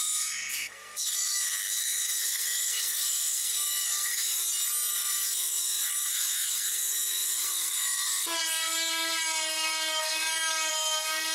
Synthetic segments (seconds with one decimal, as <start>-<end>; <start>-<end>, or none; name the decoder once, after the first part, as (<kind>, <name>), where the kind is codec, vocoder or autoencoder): 0.0-4.4 (codec, SNAC); 4.9-11.3